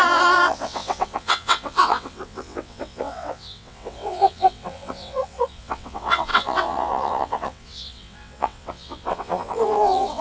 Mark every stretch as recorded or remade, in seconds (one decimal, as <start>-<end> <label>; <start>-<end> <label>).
0.0-10.2 remade